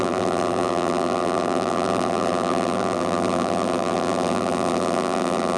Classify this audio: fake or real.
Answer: fake